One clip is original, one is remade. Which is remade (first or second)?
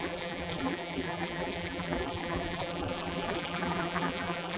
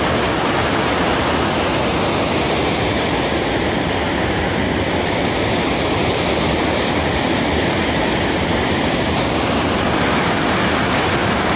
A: first